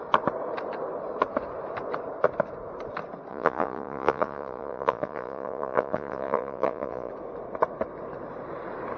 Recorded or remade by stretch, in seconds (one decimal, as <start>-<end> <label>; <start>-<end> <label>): 0.0-3.3 recorded; 3.3-7.1 remade; 7.1-9.0 recorded